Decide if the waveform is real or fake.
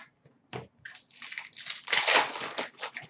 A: real